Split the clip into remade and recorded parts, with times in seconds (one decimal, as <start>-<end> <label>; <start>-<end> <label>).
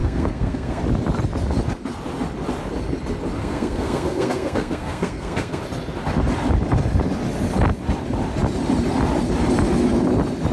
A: 0.0-0.8 remade; 0.8-3.4 recorded; 3.4-5.6 remade; 5.6-10.5 recorded